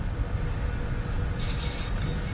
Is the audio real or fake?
real